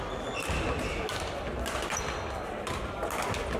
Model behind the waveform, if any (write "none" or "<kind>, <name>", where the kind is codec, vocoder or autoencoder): none